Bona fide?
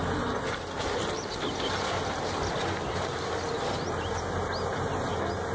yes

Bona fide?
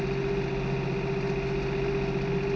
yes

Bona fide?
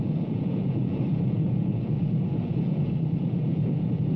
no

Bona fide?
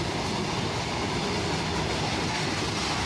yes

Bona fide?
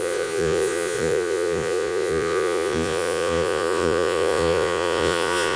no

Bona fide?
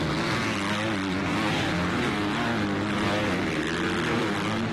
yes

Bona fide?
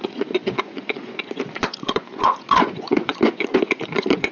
no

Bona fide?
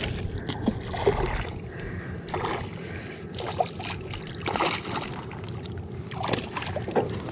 yes